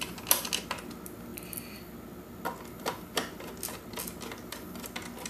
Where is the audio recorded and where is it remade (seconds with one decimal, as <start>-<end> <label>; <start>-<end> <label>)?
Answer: 0.0-5.3 recorded

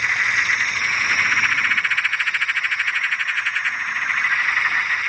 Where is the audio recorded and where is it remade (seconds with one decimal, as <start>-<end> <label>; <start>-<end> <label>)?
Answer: 0.0-0.8 recorded; 0.8-1.4 remade; 1.4-2.1 recorded; 2.1-4.0 remade; 4.0-5.1 recorded

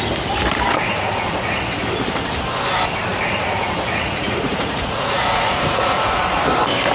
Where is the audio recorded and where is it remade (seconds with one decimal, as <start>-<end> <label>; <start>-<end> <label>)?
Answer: 0.0-0.9 recorded; 0.9-1.6 remade; 1.6-3.1 recorded; 3.1-6.4 remade; 6.4-6.9 recorded

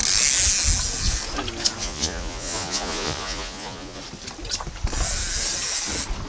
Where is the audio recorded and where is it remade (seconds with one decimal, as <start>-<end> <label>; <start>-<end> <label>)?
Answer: 0.0-1.8 recorded; 1.8-4.0 remade; 4.0-6.3 recorded

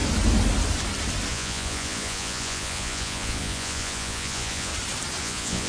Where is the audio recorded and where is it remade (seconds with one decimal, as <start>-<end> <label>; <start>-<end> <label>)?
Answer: 0.0-1.3 recorded; 1.3-4.7 remade; 4.7-5.2 recorded; 5.2-5.7 remade

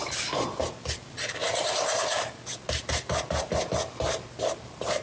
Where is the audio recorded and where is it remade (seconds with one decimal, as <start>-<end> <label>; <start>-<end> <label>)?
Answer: 0.0-5.0 recorded

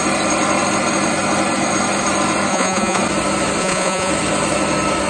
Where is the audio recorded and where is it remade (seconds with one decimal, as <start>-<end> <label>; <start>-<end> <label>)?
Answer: 0.0-2.5 recorded; 2.5-3.0 remade; 3.0-3.6 recorded; 3.6-4.1 remade; 4.1-5.1 recorded

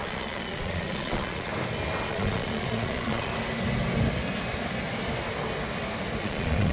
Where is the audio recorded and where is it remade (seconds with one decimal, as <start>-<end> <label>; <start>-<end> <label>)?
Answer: 0.0-1.5 remade; 1.5-2.1 recorded; 2.1-3.3 remade; 3.3-6.2 recorded; 6.2-6.7 remade